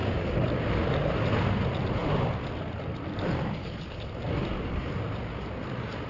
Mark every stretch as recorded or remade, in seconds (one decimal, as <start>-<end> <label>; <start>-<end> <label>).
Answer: 0.0-6.1 recorded